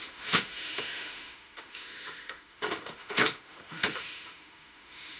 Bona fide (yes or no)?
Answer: no